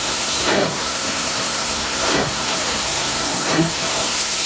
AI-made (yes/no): yes